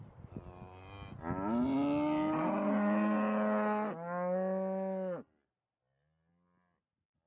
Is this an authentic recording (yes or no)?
yes